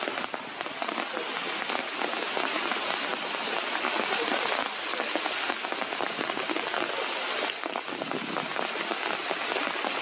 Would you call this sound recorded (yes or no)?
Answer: yes